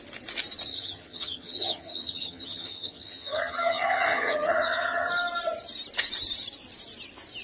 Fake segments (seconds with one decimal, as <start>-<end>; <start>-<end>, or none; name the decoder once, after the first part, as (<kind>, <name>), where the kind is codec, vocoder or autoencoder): 0.7-5.1 (vocoder, HiFi-GAN)